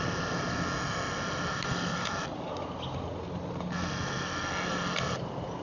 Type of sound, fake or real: real